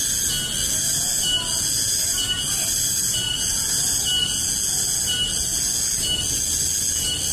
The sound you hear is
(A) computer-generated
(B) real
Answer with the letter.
B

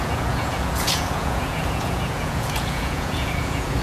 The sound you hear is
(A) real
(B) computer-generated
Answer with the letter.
B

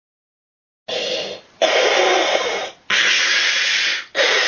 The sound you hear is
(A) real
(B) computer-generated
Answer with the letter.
A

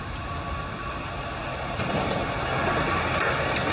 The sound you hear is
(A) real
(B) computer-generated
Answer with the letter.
A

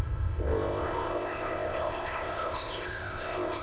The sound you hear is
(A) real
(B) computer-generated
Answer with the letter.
B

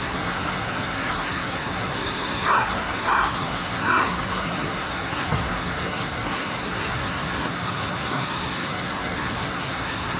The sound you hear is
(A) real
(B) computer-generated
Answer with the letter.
B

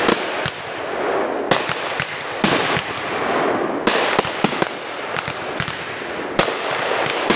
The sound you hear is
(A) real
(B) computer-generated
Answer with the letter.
A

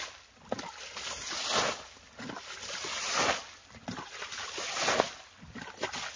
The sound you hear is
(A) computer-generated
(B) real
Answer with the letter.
B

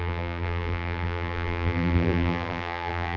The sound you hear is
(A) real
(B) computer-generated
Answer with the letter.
B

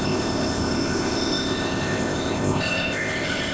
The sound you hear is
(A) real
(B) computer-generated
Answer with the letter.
B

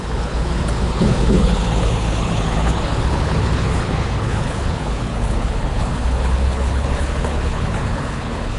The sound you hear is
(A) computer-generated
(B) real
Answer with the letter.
A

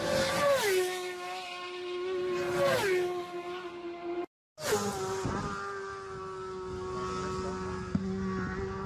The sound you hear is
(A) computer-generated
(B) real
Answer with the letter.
B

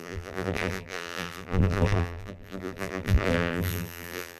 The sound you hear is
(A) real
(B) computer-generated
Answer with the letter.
B